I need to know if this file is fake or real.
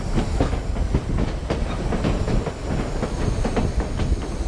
real